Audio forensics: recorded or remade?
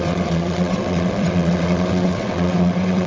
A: remade